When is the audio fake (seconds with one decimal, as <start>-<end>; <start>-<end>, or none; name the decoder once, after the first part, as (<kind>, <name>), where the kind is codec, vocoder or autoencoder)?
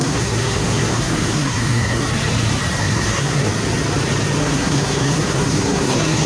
0.0-2.0 (codec, SNAC); 2.8-3.5; 4.4-6.3